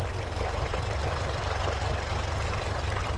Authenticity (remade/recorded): remade